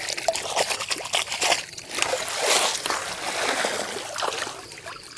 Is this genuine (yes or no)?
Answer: yes